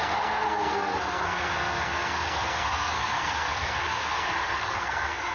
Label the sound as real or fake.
fake